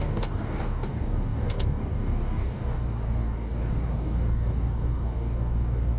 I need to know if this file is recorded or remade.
remade